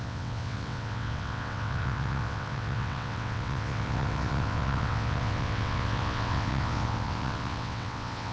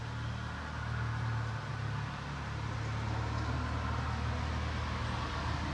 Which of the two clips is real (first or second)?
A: second